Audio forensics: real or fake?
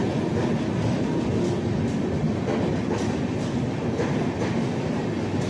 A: real